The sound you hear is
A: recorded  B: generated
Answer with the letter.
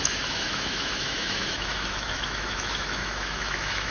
B